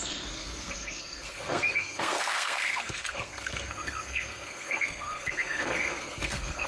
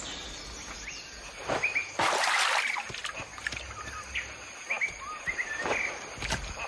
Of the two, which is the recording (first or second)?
second